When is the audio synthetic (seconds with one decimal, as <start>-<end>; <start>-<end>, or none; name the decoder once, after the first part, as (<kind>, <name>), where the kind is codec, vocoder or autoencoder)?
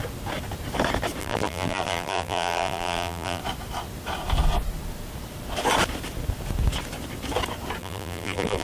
1.2-3.4 (vocoder, BigVGAN v2); 7.8-8.6